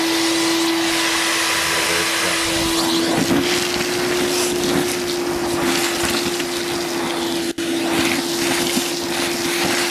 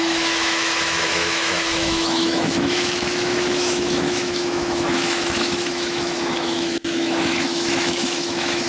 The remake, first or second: second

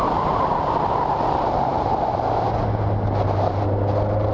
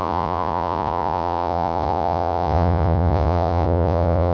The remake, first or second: second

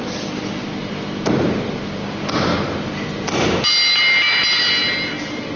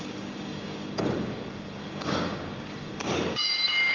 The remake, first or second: second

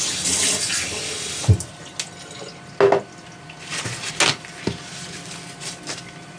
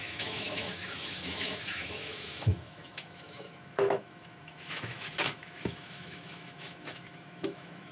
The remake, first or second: second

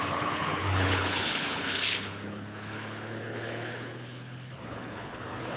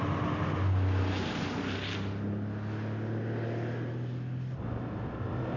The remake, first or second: first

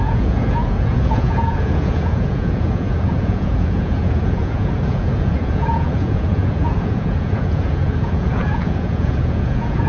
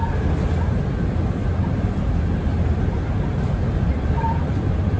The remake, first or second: first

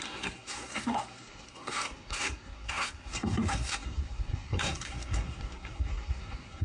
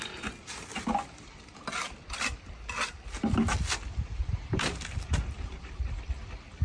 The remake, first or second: first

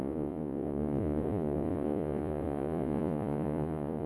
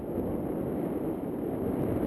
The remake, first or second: first